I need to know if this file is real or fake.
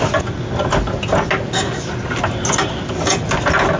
real